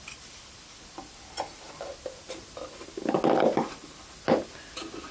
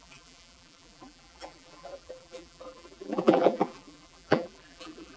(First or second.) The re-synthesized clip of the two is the second